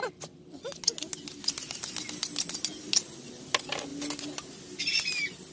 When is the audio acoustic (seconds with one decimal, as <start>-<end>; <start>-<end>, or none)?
0.0-5.5